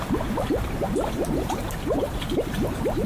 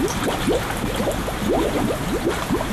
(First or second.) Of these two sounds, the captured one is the second